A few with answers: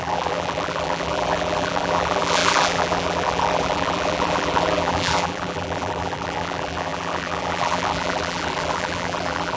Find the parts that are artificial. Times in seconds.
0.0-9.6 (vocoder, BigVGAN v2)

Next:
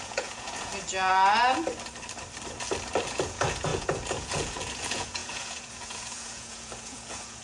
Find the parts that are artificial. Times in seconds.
0.0-0.7 (vocoder, Vocos); 3.1-7.4

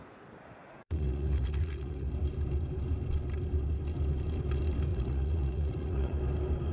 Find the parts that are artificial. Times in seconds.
0.6-2.1 (vocoder, Vocos); 4.9-6.2

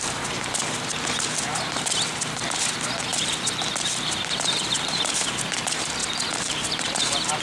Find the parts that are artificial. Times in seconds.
none

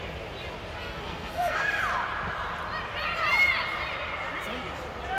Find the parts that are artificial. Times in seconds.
0.8-1.8 (codec, SNAC)

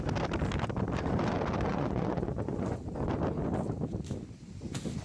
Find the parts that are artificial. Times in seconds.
1.7-2.8 (vocoder, Vocos)

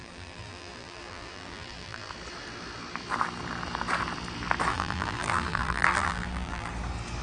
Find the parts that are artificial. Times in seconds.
0.0-2.1 (vocoder, BigVGAN v2); 4.7-6.7